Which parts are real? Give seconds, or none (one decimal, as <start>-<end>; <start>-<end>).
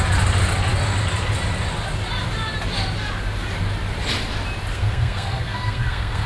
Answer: 0.0-4.7